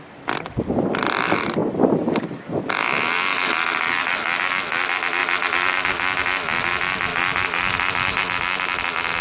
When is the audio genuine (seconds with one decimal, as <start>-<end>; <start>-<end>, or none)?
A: 0.0-5.2; 5.9-7.1; 8.2-9.2